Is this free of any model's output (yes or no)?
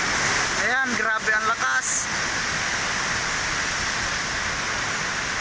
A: yes